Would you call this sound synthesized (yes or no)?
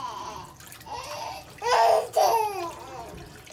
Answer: no